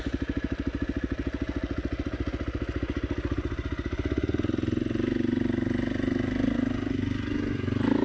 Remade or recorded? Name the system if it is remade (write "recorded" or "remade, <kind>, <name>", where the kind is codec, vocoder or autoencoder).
recorded